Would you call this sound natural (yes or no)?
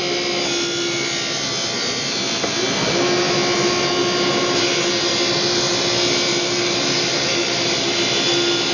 yes